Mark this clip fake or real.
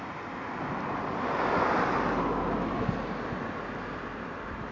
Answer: real